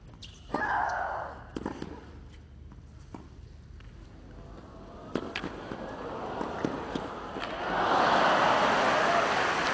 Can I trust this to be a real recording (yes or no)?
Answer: yes